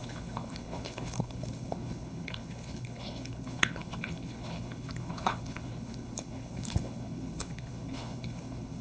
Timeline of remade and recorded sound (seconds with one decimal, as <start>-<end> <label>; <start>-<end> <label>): 0.0-8.8 remade